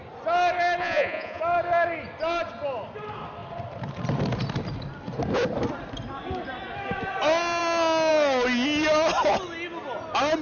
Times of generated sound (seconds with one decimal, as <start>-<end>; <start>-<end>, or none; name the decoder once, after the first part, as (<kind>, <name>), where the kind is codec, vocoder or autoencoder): 0.8-1.4 (vocoder, Vocos)